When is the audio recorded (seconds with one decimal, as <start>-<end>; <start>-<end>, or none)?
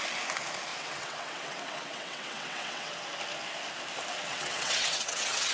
0.0-0.7; 2.9-4.3